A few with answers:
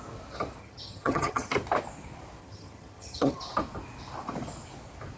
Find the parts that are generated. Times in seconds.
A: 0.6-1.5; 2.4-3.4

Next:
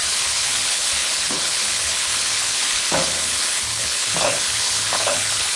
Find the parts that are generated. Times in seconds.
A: 0.0-5.6

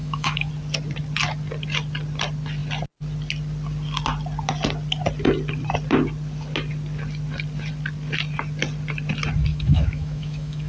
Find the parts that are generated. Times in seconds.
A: 0.0-0.5; 9.5-10.7

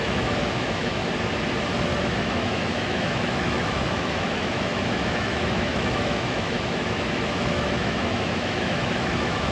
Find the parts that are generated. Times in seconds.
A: 0.0-1.0; 2.0-9.5

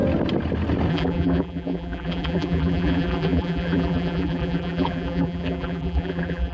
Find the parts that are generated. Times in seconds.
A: 0.9-6.5